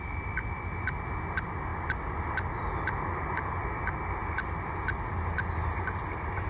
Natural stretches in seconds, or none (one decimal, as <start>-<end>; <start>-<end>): 0.0-6.5